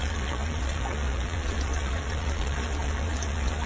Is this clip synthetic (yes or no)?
yes